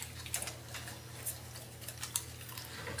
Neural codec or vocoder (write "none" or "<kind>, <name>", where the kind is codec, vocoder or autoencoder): none